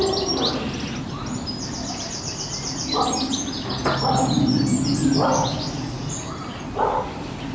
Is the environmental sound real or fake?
real